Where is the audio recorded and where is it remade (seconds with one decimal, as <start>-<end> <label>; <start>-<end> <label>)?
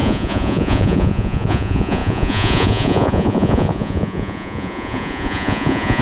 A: 0.0-6.0 remade